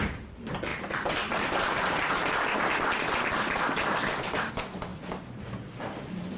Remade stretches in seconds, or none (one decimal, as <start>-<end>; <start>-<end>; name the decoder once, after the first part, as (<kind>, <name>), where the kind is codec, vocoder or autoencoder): none